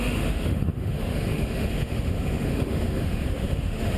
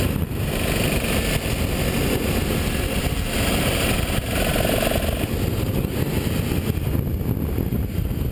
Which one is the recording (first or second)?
second